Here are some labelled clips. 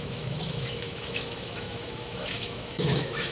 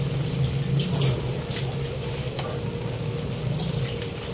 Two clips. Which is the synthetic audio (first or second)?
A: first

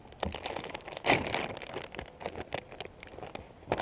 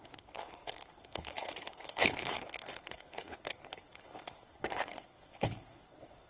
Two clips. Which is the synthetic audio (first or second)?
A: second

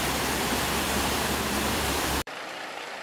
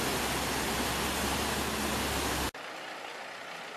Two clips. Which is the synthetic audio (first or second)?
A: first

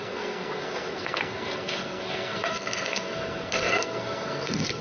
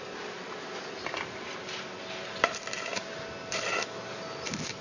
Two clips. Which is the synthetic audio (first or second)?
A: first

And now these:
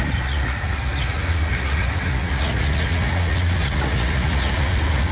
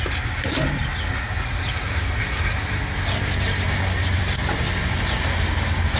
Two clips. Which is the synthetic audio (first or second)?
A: first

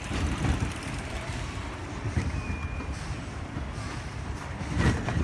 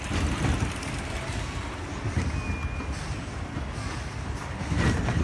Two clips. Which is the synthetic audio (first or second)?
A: first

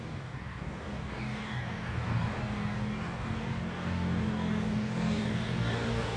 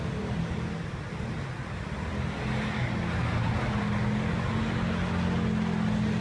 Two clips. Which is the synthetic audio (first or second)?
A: first